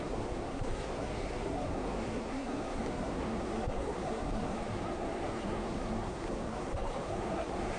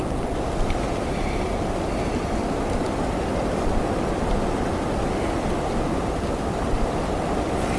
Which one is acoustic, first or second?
second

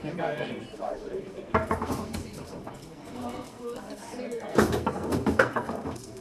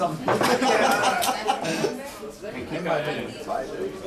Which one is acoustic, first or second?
second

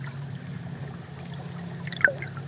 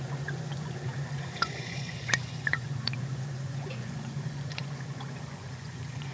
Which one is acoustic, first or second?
first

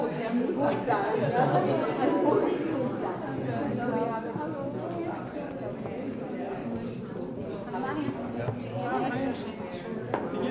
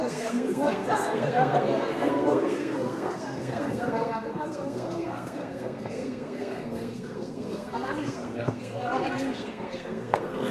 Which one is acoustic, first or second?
first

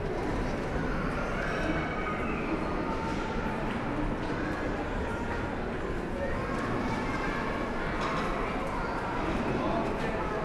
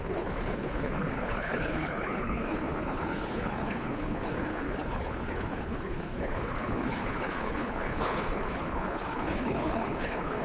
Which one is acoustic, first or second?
first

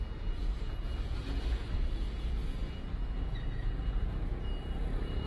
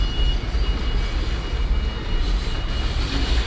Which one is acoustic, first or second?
second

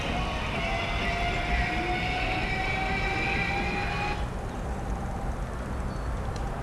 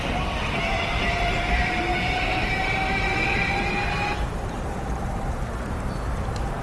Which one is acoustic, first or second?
first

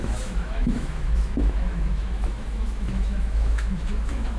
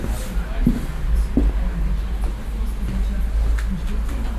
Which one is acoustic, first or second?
second